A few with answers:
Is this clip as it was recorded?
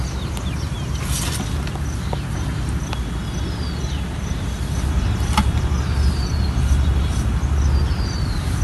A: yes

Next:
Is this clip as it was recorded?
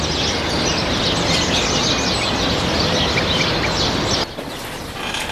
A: yes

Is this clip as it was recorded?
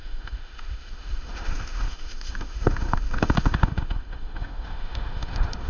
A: no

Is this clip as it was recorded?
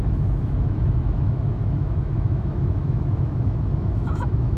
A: no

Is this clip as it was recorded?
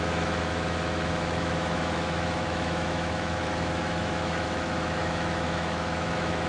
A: no